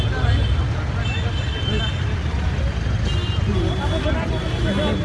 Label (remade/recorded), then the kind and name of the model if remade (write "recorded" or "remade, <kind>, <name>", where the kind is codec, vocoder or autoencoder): recorded